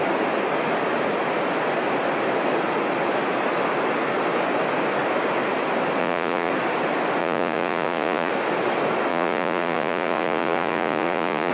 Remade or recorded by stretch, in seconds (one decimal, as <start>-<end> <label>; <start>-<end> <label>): 0.0-6.0 recorded; 6.0-6.5 remade; 6.5-7.2 recorded; 7.2-8.3 remade; 8.3-9.1 recorded; 9.1-11.5 remade

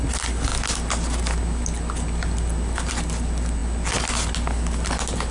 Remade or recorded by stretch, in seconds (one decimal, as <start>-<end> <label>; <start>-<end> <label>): 0.0-5.3 recorded

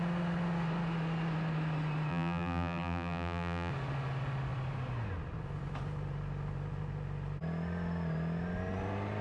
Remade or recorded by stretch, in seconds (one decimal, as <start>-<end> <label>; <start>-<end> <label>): 0.0-2.1 recorded; 2.1-3.7 remade; 3.7-9.2 recorded

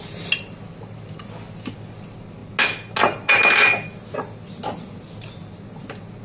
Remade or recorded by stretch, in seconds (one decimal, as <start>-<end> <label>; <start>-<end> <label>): 0.0-6.2 recorded

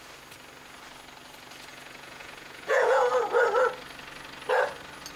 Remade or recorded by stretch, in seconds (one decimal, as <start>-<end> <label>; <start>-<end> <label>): 0.0-1.7 recorded; 1.7-3.1 remade; 3.1-5.2 recorded

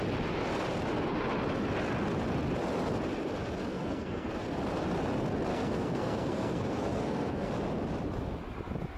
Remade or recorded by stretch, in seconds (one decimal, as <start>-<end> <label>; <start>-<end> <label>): 0.0-3.7 recorded; 3.7-4.3 remade; 4.3-5.5 recorded; 5.5-7.5 remade; 7.5-9.0 recorded

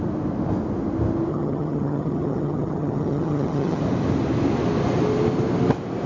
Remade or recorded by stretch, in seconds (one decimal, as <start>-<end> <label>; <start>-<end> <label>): 0.0-1.3 recorded; 1.3-3.8 remade; 3.8-6.1 recorded

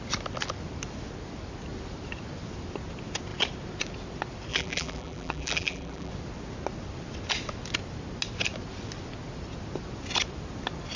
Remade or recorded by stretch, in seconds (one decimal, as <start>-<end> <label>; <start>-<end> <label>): 0.0-4.5 recorded; 4.5-6.1 remade; 6.1-11.0 recorded